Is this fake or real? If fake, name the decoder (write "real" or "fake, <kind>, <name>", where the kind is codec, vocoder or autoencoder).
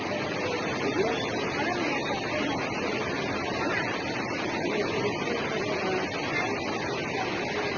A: real